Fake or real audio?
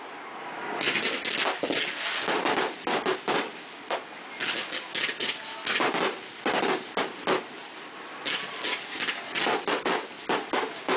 real